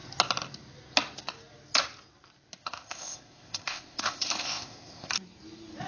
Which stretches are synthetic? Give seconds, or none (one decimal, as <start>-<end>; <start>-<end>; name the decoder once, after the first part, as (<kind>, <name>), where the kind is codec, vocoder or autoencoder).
2.6-5.1 (codec, ZipCodec)